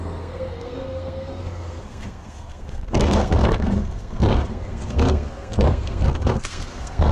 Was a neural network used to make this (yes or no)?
yes